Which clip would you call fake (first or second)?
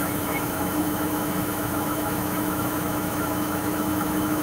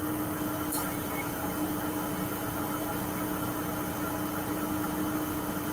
first